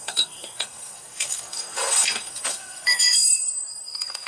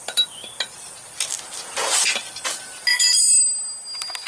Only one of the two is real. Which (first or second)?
second